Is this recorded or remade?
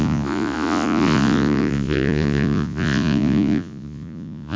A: remade